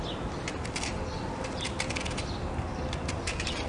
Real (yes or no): yes